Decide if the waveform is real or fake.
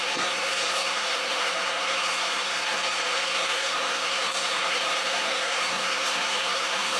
fake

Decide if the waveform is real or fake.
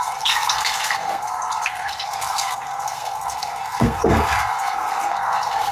fake